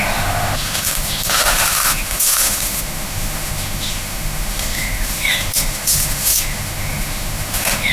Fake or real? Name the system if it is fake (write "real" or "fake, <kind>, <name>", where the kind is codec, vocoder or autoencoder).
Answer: fake, autoencoder, DAC-VAE